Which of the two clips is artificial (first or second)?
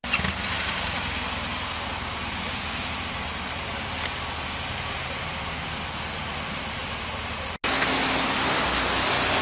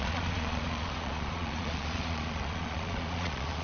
second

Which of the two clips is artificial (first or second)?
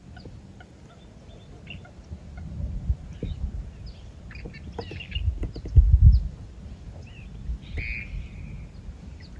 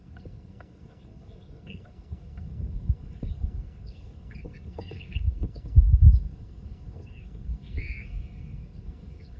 second